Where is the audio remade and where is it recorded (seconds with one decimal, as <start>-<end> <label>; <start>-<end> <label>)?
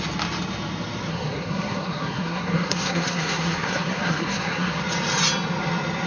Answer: 0.0-1.1 recorded; 1.1-4.8 remade; 4.8-6.1 recorded